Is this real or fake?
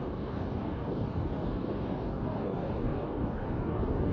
fake